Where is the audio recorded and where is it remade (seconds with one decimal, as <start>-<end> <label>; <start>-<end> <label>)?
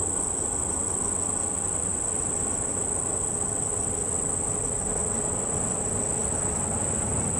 0.0-7.4 recorded